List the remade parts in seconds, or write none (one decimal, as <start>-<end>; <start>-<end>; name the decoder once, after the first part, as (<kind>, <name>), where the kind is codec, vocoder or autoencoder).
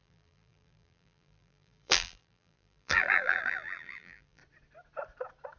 0.0-4.4 (vocoder, BigVGAN v2)